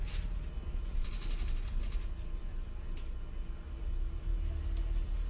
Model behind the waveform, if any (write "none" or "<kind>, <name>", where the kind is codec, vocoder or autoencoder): none